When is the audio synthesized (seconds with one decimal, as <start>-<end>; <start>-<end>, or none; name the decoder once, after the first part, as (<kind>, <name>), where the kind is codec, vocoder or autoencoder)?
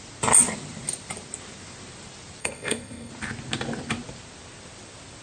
2.4-3.1 (codec, SNAC)